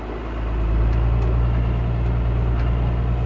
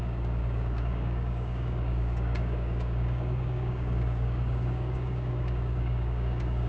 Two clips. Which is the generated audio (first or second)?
second